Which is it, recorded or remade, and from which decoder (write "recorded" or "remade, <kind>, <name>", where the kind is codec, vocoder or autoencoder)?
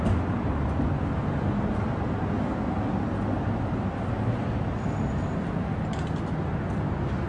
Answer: recorded